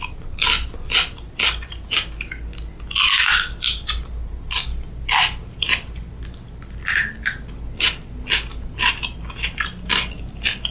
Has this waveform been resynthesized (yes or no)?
no